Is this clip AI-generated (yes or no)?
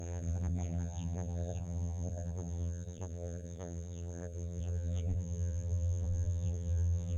yes